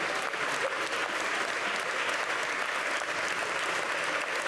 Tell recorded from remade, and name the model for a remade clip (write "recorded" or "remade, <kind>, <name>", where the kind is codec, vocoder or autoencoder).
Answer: recorded